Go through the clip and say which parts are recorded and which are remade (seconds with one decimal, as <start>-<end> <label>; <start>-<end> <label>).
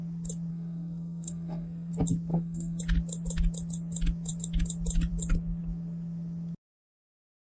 0.0-0.5 recorded; 0.5-1.9 remade; 1.9-2.3 recorded; 2.3-2.8 remade; 2.8-7.5 recorded